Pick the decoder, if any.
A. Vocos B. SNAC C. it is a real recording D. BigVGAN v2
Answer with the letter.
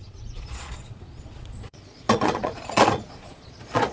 A